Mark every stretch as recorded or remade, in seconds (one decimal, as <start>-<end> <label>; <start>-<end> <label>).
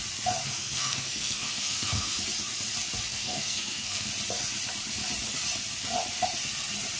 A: 0.0-0.4 recorded; 0.4-2.2 remade; 2.2-3.1 recorded; 3.1-4.1 remade; 4.1-7.0 recorded